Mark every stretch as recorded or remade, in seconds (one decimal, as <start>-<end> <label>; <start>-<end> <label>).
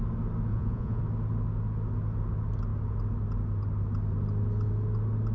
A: 0.0-0.5 recorded; 0.5-1.0 remade; 1.0-5.3 recorded